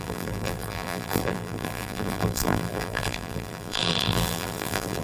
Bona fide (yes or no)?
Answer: no